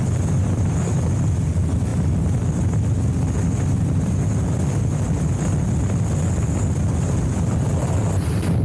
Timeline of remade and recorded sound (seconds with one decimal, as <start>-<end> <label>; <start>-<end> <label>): 0.0-1.9 recorded; 1.9-2.5 remade; 2.5-8.6 recorded